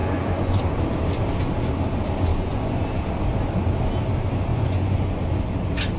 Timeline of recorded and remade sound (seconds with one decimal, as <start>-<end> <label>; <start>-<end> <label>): 0.0-0.6 remade; 0.6-2.3 recorded; 2.3-3.0 remade; 3.0-4.5 recorded; 4.5-5.2 remade; 5.2-6.0 recorded